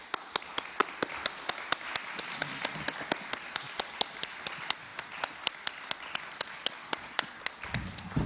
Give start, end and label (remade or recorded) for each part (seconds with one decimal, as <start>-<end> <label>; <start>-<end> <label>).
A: 0.0-6.8 recorded; 6.8-7.4 remade; 7.4-8.3 recorded